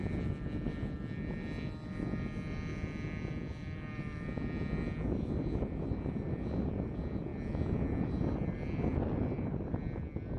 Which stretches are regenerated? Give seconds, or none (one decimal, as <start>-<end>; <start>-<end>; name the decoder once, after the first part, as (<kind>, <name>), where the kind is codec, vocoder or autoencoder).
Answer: none